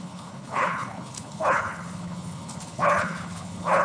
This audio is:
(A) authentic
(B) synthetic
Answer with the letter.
B